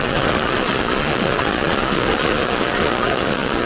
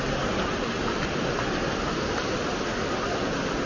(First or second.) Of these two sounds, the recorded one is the second